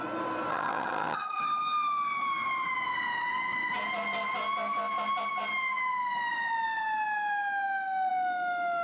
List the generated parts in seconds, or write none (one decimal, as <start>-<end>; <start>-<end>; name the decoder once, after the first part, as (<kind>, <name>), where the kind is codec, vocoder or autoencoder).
0.5-1.4 (vocoder, HiFi-GAN)